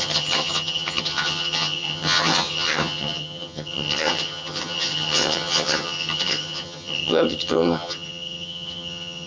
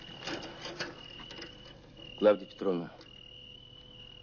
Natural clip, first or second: second